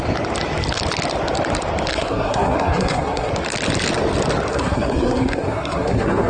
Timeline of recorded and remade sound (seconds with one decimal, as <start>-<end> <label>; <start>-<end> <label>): 0.0-1.9 recorded; 1.9-3.3 remade; 3.3-4.5 recorded; 4.5-6.3 remade